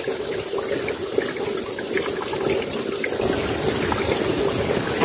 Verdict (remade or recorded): recorded